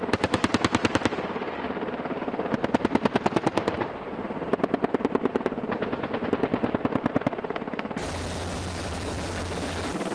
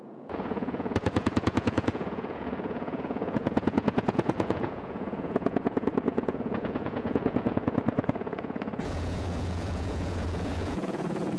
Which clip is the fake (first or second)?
second